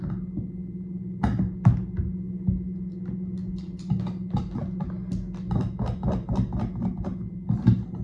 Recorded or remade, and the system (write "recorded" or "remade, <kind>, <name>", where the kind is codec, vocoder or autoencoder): recorded